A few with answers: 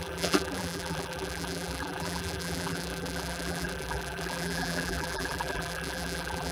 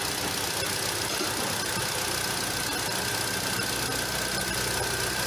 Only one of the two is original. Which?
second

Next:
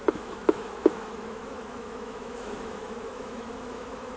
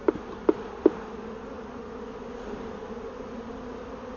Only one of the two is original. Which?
second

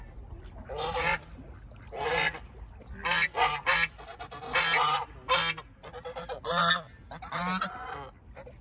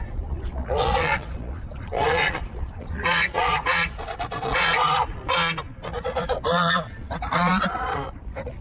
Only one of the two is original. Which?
first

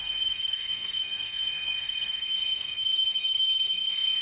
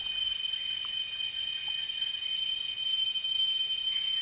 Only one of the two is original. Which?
second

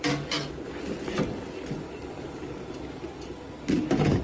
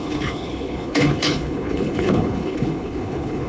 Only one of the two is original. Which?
first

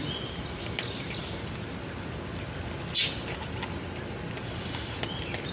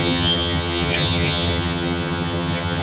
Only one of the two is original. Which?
first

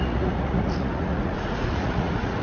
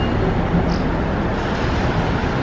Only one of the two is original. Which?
second